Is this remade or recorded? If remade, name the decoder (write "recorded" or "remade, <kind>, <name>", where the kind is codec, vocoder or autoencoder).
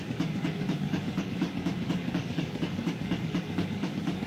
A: remade, codec, DAC